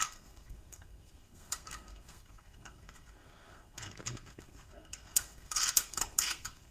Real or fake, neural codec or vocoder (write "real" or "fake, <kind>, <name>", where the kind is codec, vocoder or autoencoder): fake, codec, SNAC